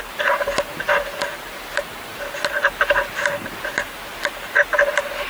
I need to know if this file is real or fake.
real